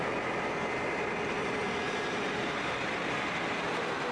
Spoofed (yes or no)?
no